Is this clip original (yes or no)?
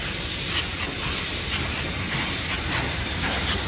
yes